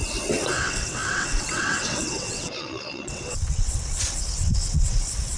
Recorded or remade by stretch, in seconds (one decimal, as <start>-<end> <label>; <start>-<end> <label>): 0.0-0.5 recorded; 0.5-5.4 remade